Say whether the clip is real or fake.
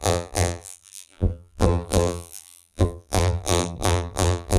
fake